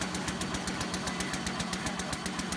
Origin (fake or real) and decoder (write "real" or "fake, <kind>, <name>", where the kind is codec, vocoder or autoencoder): real